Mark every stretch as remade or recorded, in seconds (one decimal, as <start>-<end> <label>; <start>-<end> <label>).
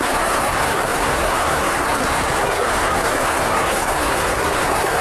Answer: 0.0-5.0 remade